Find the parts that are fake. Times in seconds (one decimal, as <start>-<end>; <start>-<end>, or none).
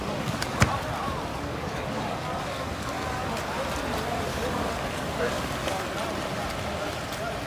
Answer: 0.0-0.6; 1.3-3.3; 4.3-5.9